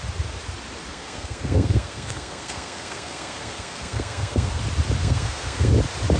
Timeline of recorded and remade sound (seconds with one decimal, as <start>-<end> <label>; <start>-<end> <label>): 0.0-0.9 recorded; 0.9-4.6 remade; 4.6-5.0 recorded; 5.0-5.7 remade; 5.7-6.2 recorded